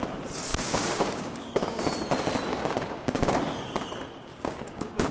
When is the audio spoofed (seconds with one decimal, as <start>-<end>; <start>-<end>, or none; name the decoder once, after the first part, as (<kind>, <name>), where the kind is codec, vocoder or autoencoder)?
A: 0.5-1.8 (codec, DAC); 2.5-3.3; 4.3-5.1